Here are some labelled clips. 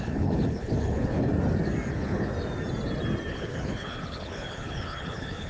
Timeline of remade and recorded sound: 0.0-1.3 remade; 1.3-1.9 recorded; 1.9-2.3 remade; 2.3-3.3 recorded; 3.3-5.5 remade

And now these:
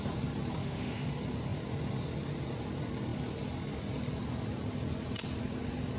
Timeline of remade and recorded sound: 0.0-0.6 recorded; 0.6-1.1 remade; 1.1-6.0 recorded

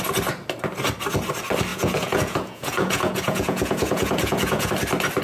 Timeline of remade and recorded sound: 0.0-1.7 recorded; 1.7-4.7 remade; 4.7-5.2 recorded

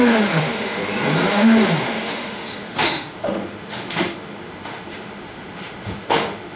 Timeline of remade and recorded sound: 0.0-0.8 remade; 0.8-1.3 recorded; 1.3-6.6 remade

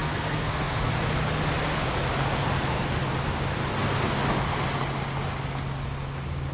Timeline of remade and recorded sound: 0.0-0.9 remade; 0.9-6.5 recorded

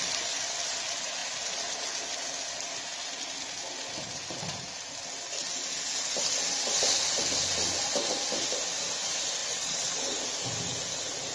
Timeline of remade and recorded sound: 0.0-9.4 recorded; 9.4-10.0 remade; 10.0-11.3 recorded